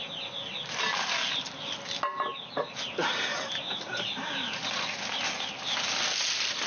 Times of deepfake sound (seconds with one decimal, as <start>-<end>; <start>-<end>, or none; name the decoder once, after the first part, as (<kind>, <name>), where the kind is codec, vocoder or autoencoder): 3.3-4.7 (vocoder, BigVGAN v2)